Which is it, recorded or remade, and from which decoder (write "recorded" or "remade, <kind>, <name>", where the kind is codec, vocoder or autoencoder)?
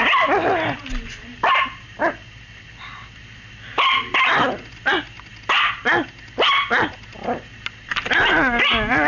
recorded